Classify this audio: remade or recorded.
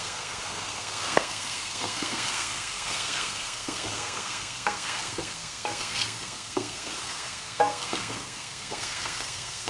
remade